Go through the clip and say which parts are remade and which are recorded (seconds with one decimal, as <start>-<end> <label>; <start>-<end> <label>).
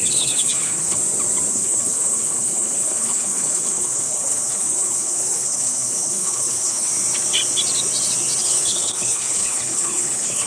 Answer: 0.0-1.0 remade; 1.0-1.5 recorded; 1.5-6.9 remade; 6.9-8.4 recorded; 8.4-10.5 remade